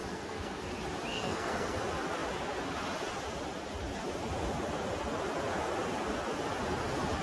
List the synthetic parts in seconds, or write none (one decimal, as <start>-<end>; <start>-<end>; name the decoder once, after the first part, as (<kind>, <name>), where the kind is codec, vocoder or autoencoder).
0.0-0.7 (codec, SNAC); 1.1-1.8